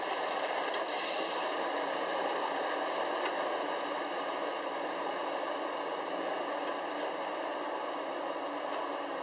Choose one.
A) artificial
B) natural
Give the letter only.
B